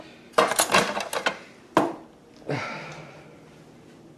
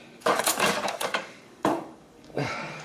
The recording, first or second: first